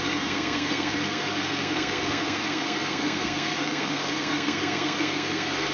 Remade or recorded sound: remade